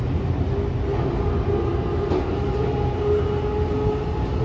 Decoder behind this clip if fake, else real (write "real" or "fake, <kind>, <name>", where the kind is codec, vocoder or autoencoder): real